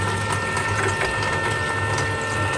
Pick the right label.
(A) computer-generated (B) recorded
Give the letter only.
B